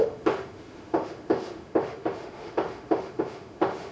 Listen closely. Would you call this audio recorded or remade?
remade